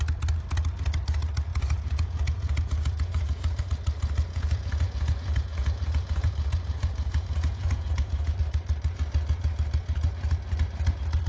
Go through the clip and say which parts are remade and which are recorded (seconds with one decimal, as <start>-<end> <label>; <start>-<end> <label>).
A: 0.0-1.5 recorded; 1.5-3.6 remade; 3.6-4.3 recorded; 4.3-8.4 remade; 8.4-11.3 recorded